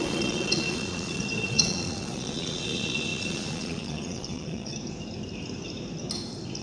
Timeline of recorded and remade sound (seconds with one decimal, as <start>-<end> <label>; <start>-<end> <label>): 0.0-4.7 remade; 4.7-6.6 recorded